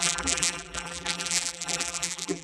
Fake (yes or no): yes